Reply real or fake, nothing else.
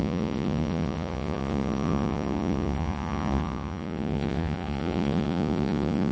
fake